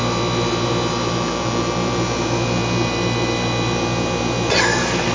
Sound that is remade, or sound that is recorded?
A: recorded